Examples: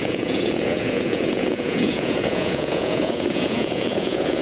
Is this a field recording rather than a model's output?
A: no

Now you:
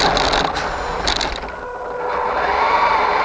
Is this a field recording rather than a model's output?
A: yes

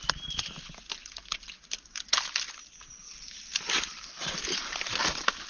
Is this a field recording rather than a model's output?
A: yes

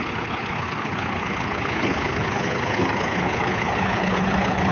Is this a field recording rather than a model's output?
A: no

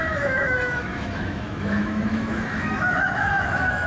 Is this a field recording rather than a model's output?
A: no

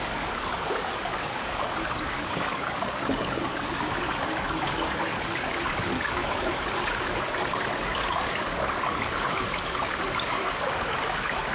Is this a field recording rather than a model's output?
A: no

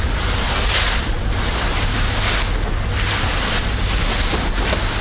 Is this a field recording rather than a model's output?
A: yes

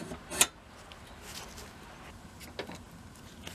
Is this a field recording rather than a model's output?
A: yes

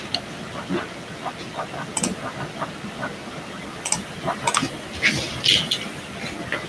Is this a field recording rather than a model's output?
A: yes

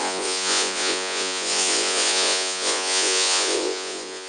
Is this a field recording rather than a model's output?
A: no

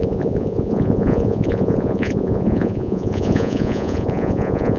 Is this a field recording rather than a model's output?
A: no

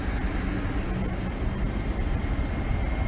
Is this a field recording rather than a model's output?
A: yes